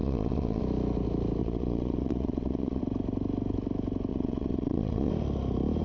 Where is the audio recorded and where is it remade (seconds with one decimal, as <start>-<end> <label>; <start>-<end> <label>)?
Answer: 0.0-0.6 remade; 0.6-1.4 recorded; 1.4-2.8 remade; 2.8-4.1 recorded; 4.1-5.1 remade; 5.1-5.8 recorded

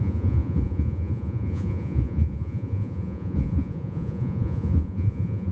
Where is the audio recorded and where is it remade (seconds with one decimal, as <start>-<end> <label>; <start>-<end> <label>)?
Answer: 0.0-5.5 remade

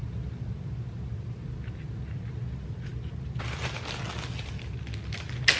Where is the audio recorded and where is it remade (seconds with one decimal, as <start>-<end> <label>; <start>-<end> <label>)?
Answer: 0.0-5.6 recorded

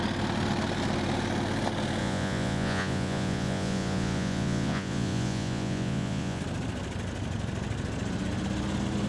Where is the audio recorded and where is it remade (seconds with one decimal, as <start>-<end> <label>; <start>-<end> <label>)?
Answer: 0.0-2.0 recorded; 2.0-6.4 remade; 6.4-9.1 recorded

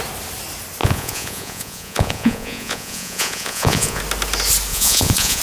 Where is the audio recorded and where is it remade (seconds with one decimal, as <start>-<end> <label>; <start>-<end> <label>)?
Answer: 0.0-0.8 recorded; 0.8-4.0 remade; 4.0-4.7 recorded; 4.7-5.4 remade

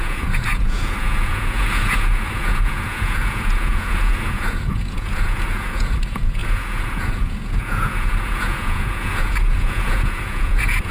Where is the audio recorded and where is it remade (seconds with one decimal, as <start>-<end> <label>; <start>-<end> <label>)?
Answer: 0.0-10.9 remade